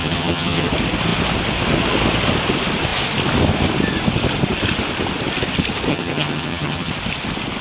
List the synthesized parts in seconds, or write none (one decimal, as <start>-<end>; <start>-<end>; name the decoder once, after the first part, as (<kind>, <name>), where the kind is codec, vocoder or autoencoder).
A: 0.0-0.7 (vocoder, HiFi-GAN); 5.9-6.9